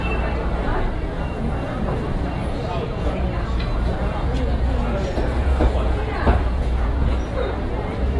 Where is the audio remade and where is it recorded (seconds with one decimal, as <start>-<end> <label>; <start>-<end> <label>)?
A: 0.0-0.7 recorded; 0.7-1.5 remade; 1.5-2.4 recorded; 2.4-7.3 remade; 7.3-8.2 recorded

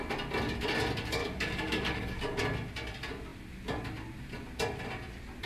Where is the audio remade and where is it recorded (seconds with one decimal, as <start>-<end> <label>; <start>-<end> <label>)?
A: 0.0-1.2 recorded; 1.2-2.4 remade; 2.4-5.5 recorded

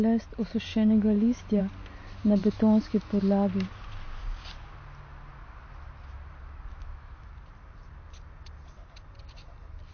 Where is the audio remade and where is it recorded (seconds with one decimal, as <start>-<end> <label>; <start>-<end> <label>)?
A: 0.0-0.7 recorded; 0.7-1.6 remade; 1.6-2.4 recorded; 2.4-3.2 remade; 3.2-6.7 recorded; 6.7-7.3 remade; 7.3-9.9 recorded

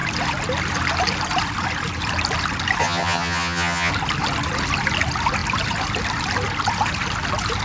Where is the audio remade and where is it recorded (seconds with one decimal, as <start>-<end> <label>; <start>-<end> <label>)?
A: 0.0-2.8 recorded; 2.8-3.9 remade; 3.9-7.6 recorded

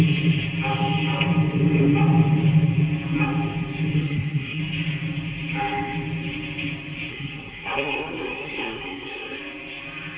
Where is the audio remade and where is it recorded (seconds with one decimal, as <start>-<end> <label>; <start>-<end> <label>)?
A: 0.0-4.0 recorded; 4.0-4.6 remade; 4.6-7.1 recorded; 7.1-9.4 remade; 9.4-10.2 recorded